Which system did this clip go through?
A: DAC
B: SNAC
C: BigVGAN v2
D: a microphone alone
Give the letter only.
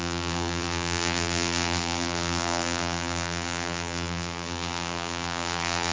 C